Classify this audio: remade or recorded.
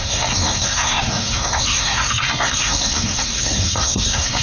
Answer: remade